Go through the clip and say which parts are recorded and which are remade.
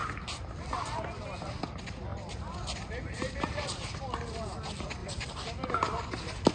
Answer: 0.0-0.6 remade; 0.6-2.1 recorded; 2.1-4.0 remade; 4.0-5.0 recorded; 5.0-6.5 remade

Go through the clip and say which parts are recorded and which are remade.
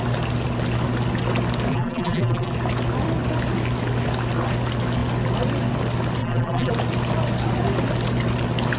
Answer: 0.0-1.7 recorded; 1.7-2.5 remade; 2.5-6.2 recorded; 6.2-6.7 remade; 6.7-8.8 recorded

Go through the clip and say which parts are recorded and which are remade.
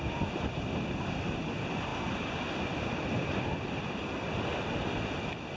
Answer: 0.0-5.6 recorded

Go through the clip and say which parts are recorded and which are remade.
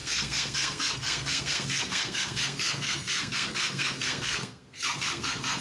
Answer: 0.0-5.6 remade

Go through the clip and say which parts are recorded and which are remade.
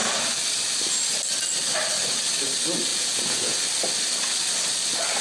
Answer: 0.0-2.9 recorded; 2.9-3.6 remade; 3.6-5.2 recorded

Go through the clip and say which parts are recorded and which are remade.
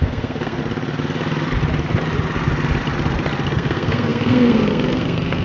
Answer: 0.0-0.6 remade; 0.6-3.5 recorded; 3.5-5.4 remade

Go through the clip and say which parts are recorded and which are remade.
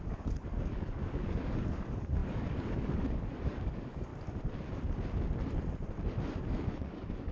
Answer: 0.0-4.1 remade; 4.1-6.4 recorded; 6.4-7.3 remade